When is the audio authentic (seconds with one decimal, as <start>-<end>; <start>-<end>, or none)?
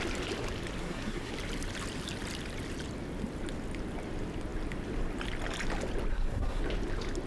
0.0-0.8; 1.3-6.1; 6.6-7.3